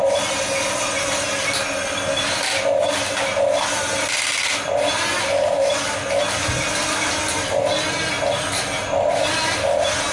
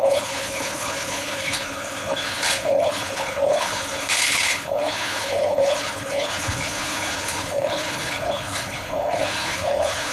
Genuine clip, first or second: first